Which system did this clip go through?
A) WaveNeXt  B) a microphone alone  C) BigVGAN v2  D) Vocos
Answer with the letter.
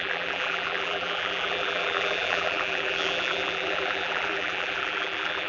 C